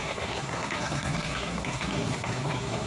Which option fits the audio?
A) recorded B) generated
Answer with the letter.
B